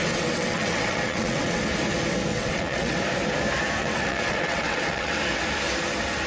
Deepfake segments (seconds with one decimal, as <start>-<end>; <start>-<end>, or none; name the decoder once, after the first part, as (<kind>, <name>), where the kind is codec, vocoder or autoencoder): 0.0-1.6 (vocoder, WaveNeXt); 2.3-3.0; 3.8-5.2